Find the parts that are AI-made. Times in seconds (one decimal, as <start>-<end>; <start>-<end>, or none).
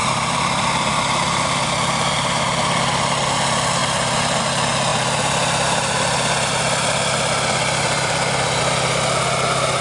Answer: 0.0-1.7; 3.8-4.4; 4.9-8.6